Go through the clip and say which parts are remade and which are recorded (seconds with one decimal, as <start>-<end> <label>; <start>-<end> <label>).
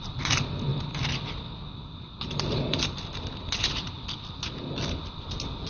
0.0-5.7 recorded